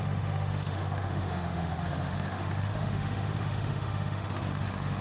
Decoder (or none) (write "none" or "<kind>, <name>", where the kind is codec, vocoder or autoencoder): autoencoder, DAC-VAE